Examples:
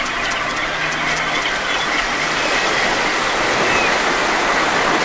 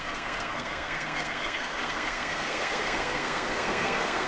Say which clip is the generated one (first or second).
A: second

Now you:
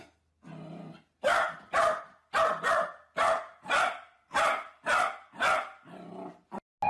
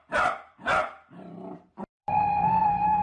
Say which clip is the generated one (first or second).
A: second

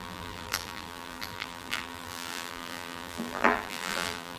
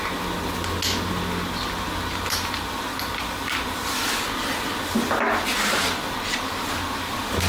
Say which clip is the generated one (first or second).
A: first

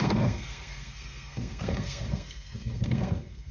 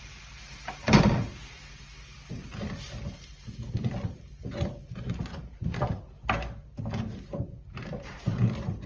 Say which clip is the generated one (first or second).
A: first